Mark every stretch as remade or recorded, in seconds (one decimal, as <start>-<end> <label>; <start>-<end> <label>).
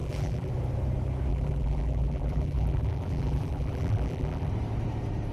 0.0-0.5 remade; 0.5-1.3 recorded; 1.3-4.5 remade; 4.5-5.3 recorded